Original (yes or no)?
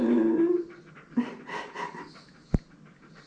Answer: yes